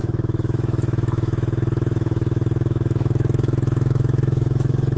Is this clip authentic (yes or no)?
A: no